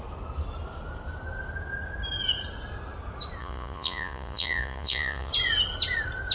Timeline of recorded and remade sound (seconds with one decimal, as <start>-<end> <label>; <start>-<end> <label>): 0.0-3.4 recorded; 3.4-5.3 remade; 5.3-6.3 recorded